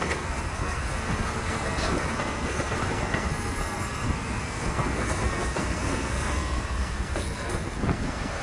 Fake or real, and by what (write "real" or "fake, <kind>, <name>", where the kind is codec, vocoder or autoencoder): fake, codec, SNAC